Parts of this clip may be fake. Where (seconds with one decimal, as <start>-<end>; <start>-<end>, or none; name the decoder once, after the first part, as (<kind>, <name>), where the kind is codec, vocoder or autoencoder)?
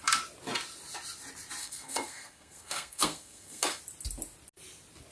1.6-3.8 (codec, SNAC)